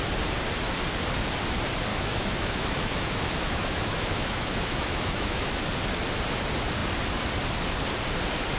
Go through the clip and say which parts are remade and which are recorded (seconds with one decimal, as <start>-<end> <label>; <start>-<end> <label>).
0.0-1.9 recorded; 1.9-5.5 remade; 5.5-8.6 recorded

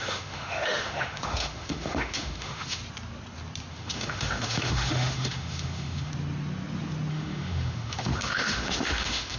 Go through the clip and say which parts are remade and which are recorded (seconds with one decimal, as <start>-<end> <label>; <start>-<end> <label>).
0.0-2.8 remade; 2.8-3.7 recorded; 3.7-6.1 remade; 6.1-7.1 recorded; 7.1-9.4 remade

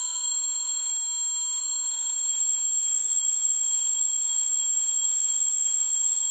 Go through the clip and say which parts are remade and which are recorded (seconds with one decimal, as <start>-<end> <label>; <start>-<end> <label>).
0.0-0.9 remade; 0.9-1.6 recorded; 1.6-6.3 remade

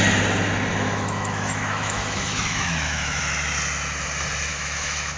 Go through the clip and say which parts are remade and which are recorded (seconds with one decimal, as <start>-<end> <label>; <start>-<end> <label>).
0.0-0.7 recorded; 0.7-3.2 remade; 3.2-4.5 recorded; 4.5-5.2 remade

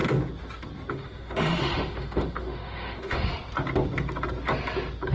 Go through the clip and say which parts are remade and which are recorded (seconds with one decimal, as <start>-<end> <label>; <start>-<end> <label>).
0.0-0.9 recorded; 0.9-3.3 remade; 3.3-5.1 recorded